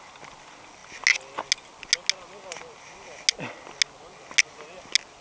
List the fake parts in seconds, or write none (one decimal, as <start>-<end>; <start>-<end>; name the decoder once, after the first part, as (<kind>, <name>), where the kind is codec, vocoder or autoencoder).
none